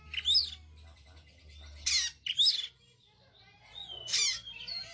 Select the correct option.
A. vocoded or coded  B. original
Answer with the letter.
B